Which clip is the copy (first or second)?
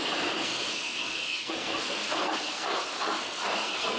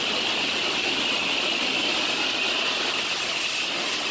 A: first